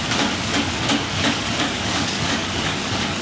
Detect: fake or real fake